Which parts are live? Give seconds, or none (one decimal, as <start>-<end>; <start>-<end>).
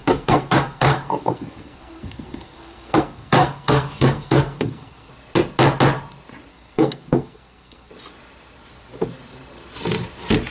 5.1-6.5; 7.9-10.5